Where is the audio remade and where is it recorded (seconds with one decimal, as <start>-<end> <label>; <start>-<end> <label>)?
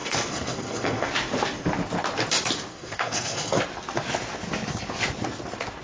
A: 0.0-1.1 remade; 1.1-2.7 recorded; 2.7-3.6 remade; 3.6-5.8 recorded